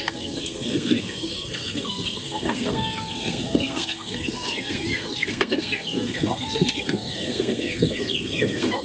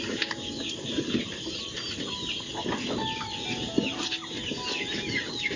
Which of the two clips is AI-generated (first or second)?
first